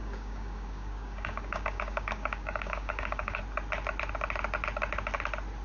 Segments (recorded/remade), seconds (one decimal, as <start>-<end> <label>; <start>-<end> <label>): 0.0-3.4 remade; 3.4-5.6 recorded